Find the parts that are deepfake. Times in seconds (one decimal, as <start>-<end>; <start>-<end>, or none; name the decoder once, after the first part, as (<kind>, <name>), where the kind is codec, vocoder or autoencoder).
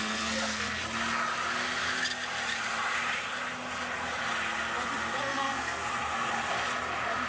0.0-0.8 (codec, SNAC); 5.2-5.8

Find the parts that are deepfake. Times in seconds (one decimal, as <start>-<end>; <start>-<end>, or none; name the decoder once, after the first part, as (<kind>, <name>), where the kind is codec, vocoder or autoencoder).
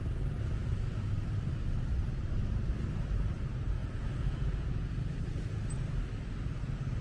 3.8-4.9 (vocoder, Vocos)